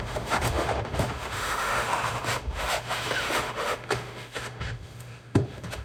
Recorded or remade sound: remade